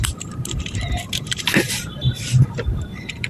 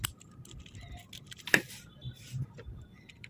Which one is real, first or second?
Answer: second